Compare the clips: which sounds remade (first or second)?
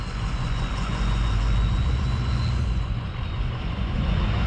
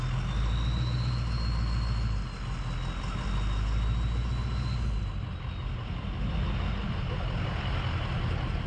first